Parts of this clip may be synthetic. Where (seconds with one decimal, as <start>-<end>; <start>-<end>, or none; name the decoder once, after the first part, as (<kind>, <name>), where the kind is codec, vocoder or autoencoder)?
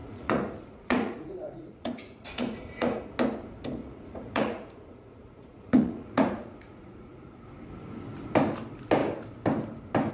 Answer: 0.0-3.0 (vocoder, Vocos); 3.8-7.5